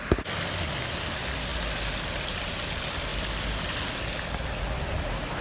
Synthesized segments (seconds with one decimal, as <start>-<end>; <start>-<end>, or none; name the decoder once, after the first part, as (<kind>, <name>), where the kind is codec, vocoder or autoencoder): none